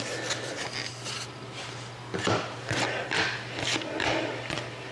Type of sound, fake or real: real